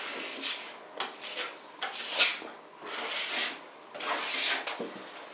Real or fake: real